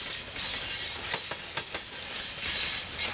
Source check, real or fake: real